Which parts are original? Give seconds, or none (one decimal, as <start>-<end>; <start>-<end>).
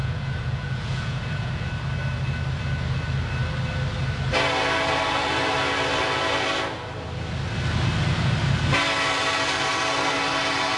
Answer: 1.7-10.8